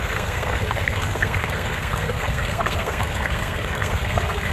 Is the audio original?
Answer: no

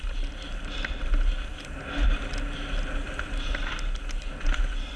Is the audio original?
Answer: yes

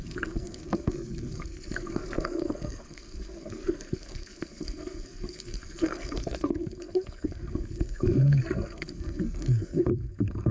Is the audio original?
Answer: no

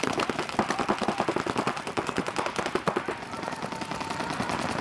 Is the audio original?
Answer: yes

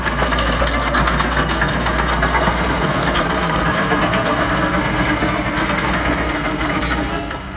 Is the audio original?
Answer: no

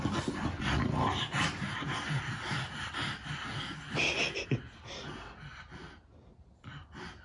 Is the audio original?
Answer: yes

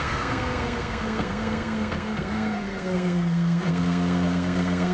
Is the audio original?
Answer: no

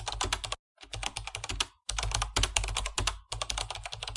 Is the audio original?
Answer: yes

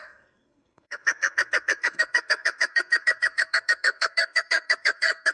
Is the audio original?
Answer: no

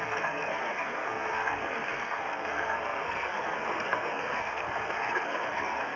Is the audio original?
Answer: no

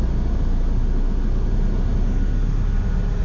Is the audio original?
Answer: yes